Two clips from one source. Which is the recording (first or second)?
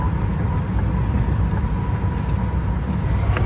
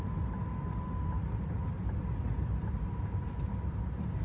first